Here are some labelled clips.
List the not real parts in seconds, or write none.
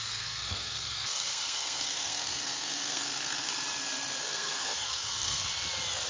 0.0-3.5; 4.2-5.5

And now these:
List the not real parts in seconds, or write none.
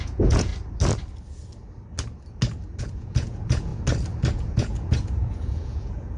0.0-0.5; 2.8-3.7; 4.3-6.2